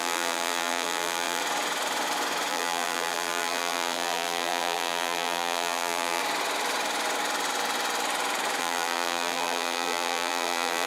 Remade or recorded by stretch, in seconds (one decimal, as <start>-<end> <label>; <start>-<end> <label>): 0.0-1.4 remade; 1.4-2.5 recorded; 2.5-6.2 remade; 6.2-8.6 recorded; 8.6-10.9 remade